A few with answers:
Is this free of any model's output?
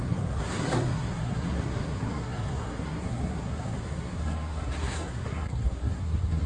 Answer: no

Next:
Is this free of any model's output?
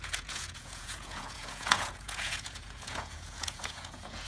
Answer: no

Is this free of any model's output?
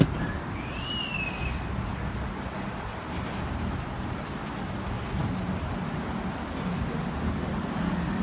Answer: yes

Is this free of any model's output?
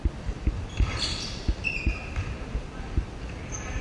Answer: yes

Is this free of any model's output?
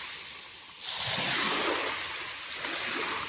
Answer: yes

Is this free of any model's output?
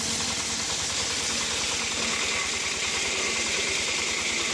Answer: yes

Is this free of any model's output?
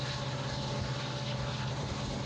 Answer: yes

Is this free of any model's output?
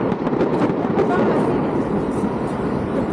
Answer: yes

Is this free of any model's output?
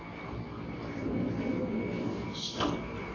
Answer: no